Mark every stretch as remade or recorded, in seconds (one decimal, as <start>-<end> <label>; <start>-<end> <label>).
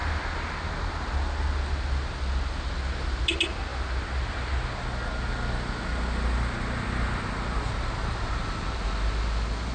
0.0-9.7 recorded